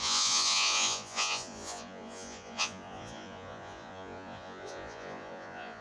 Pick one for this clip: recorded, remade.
remade